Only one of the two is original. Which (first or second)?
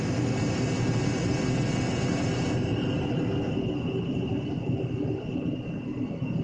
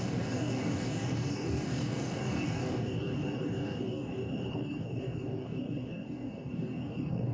first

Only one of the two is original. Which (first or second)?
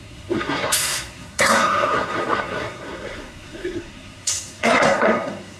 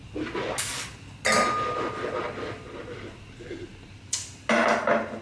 second